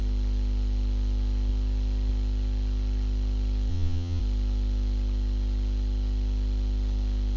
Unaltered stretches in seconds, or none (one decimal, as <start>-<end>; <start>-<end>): 0.0-3.7; 4.2-7.4